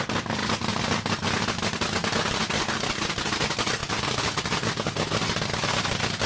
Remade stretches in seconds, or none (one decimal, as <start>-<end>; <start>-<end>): none